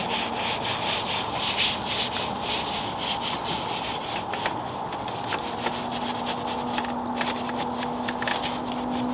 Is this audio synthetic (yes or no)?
no